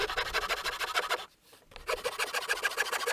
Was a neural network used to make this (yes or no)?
no